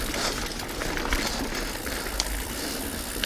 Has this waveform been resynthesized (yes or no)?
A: no